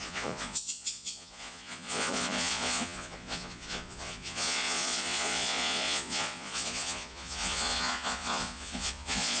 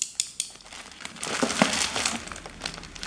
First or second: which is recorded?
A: second